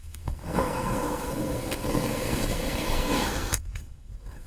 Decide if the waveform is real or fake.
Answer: fake